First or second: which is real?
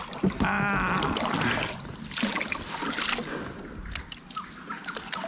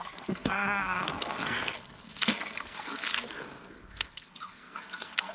first